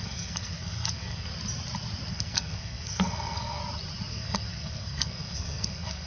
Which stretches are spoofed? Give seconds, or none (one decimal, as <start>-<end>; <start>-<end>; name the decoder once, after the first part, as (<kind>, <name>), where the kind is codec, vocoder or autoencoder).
0.0-1.3 (codec, SNAC); 2.1-3.6; 4.1-6.1